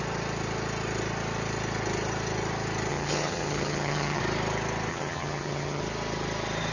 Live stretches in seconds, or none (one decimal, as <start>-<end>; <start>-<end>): 0.0-2.9; 4.2-4.9; 5.8-6.7